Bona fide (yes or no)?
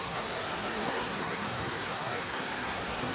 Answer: no